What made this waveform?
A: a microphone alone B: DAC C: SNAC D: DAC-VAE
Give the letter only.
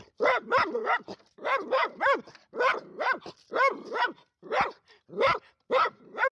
A